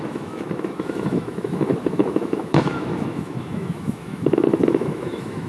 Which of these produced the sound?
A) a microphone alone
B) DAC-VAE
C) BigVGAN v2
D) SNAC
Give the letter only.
B